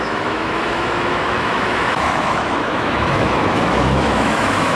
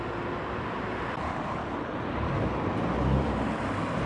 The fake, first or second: first